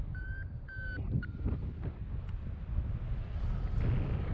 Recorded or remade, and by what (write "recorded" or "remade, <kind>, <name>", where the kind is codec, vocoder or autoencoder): recorded